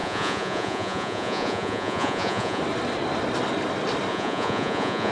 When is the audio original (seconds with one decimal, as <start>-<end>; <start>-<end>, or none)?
2.6-4.1